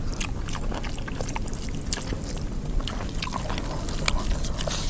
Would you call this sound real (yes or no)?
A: yes